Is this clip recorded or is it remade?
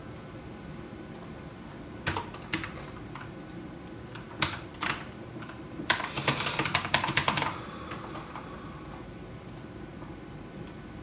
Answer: recorded